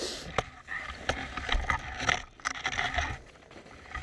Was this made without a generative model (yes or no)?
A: yes